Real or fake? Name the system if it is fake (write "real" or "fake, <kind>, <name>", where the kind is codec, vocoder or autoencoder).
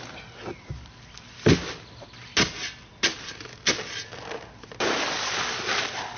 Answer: real